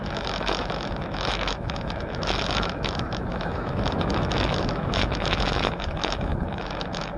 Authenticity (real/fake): fake